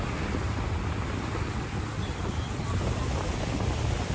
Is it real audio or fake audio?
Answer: real